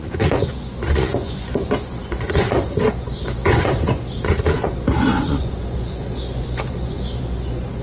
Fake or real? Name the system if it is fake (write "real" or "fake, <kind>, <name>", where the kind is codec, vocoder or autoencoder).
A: fake, vocoder, Vocos